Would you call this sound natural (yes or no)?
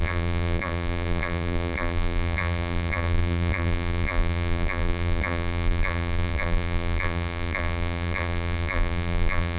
no